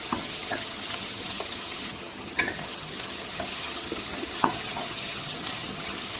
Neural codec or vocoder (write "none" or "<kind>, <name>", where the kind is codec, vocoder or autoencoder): vocoder, HiFi-GAN